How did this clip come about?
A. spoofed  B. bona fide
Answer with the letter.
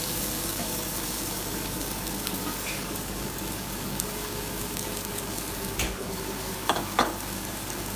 A